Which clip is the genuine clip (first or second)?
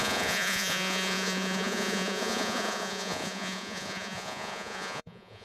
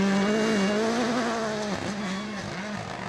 second